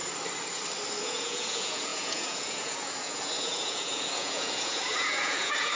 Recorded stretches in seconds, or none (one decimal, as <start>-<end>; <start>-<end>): 0.0-1.0

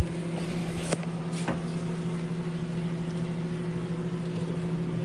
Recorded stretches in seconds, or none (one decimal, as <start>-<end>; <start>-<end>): 0.0-0.6; 1.2-5.0

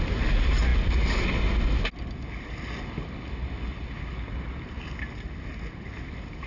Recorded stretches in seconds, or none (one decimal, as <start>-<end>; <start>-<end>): 0.0-6.5

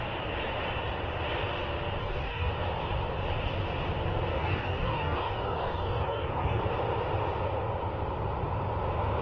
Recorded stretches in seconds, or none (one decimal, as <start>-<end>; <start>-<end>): 0.0-2.0; 2.5-4.3; 6.6-9.2

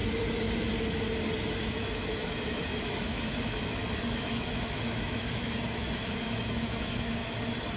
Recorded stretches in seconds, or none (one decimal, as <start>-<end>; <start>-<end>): 0.0-1.6; 7.2-7.8